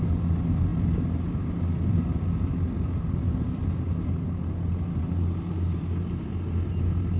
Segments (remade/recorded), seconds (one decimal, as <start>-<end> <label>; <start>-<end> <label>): 0.0-7.2 recorded